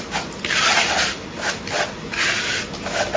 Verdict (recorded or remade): recorded